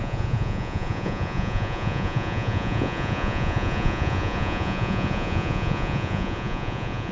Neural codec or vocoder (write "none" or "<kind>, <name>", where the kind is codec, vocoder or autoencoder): vocoder, Vocos